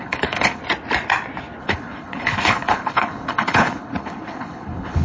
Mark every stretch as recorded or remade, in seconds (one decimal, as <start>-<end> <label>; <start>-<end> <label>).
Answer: 0.0-0.6 remade; 0.6-1.6 recorded; 1.6-5.0 remade